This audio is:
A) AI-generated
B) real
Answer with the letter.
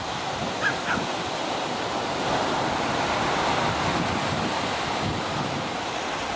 B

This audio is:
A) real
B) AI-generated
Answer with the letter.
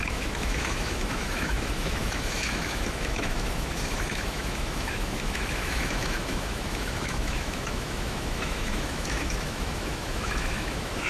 B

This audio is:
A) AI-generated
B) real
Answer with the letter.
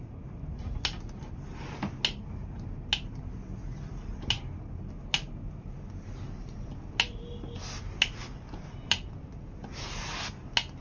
B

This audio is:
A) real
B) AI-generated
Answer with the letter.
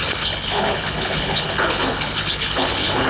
B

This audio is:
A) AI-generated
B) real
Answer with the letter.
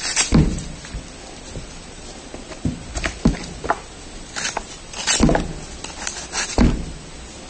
B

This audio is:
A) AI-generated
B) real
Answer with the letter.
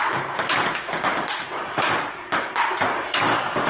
A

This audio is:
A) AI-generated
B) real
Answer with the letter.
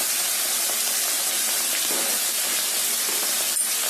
B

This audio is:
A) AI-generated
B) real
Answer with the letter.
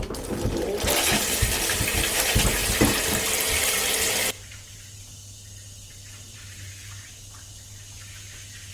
B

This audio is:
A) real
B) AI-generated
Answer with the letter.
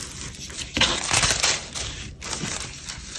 A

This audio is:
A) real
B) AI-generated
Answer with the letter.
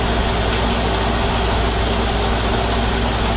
A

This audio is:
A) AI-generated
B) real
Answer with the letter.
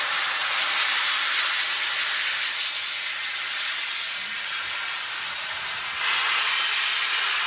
B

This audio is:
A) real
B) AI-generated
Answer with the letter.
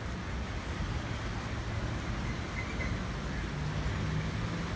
A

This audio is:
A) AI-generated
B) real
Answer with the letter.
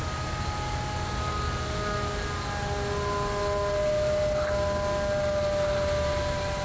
B